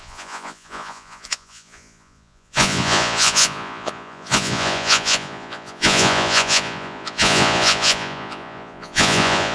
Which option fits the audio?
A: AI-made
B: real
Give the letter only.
A